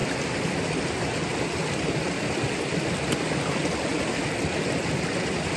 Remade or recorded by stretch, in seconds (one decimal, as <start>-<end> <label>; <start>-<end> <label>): 0.0-5.6 recorded